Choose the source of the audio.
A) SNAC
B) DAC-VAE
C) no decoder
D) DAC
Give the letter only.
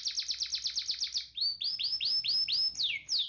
C